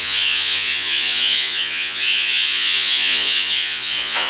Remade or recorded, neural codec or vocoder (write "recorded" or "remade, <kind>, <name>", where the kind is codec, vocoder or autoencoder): remade, vocoder, Vocos